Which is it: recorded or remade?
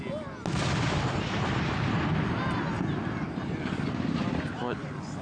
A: recorded